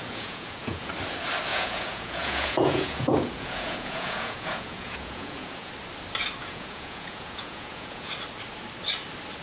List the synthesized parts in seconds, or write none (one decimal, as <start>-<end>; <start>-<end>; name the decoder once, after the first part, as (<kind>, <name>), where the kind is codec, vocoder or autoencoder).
0.0-0.9 (vocoder, Vocos); 1.5-5.7; 6.4-8.1